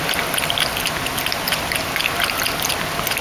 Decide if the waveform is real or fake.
real